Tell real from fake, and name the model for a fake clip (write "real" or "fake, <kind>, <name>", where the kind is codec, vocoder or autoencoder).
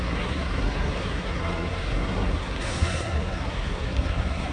fake, codec, SNAC